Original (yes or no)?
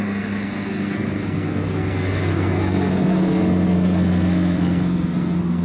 no